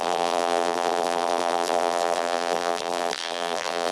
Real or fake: fake